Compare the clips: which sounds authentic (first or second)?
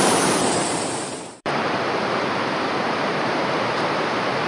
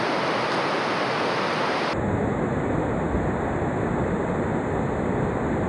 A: second